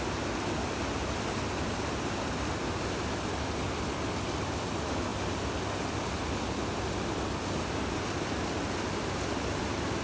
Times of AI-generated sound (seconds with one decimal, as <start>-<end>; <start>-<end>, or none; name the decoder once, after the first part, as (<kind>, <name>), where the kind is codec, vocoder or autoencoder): none

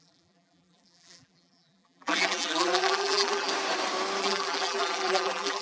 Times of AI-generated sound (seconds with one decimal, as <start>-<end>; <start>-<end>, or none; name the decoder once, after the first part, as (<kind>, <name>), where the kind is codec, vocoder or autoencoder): 0.0-3.5 (vocoder, BigVGAN v2); 4.2-5.6

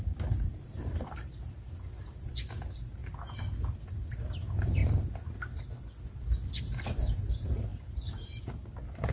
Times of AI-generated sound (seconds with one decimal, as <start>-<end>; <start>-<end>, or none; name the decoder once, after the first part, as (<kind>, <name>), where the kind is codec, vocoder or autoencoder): 0.0-3.0 (vocoder, BigVGAN v2); 3.9-4.8; 6.6-9.1

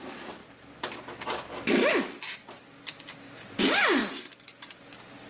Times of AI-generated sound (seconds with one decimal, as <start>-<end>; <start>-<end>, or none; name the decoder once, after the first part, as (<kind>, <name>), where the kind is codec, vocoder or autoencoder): 4.0-4.8 (vocoder, BigVGAN v2)

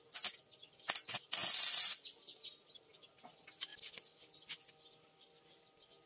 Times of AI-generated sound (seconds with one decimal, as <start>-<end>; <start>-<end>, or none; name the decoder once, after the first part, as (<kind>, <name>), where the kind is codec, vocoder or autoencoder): none

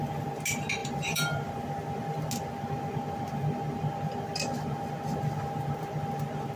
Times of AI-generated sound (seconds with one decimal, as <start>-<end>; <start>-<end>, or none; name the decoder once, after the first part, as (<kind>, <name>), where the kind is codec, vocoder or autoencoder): 0.8-1.5 (vocoder, BigVGAN v2)